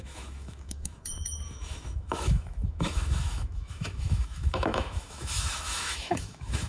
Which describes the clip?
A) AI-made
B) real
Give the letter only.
A